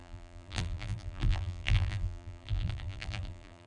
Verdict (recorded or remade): remade